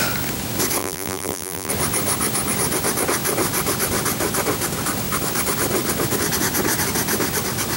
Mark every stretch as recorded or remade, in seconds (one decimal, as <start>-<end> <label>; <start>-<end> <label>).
0.0-0.8 recorded; 0.8-1.7 remade; 1.7-7.8 recorded